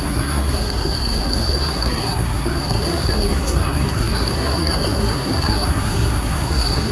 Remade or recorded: remade